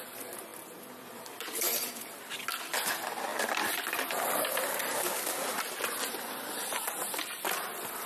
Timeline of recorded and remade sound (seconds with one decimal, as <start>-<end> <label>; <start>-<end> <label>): 0.0-0.5 recorded; 0.5-2.2 remade; 2.2-3.3 recorded; 3.3-4.3 remade; 4.3-8.1 recorded